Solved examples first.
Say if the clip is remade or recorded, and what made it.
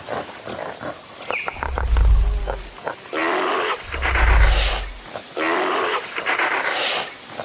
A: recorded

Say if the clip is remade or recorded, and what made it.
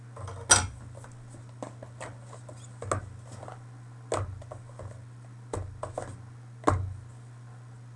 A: recorded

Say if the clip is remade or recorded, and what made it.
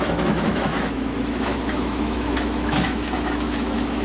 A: remade, autoencoder, DAC-VAE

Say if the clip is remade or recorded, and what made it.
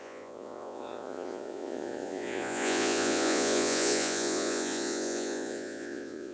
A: remade, vocoder, Vocos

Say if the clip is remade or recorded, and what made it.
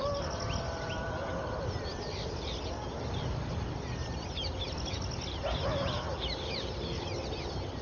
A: recorded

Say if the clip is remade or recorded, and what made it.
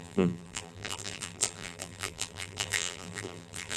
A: remade, vocoder, BigVGAN v2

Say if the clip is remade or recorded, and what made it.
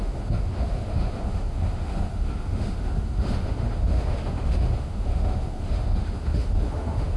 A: remade, autoencoder, DAC-VAE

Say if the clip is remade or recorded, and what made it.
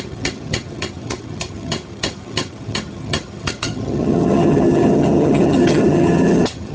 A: remade, vocoder, HiFi-GAN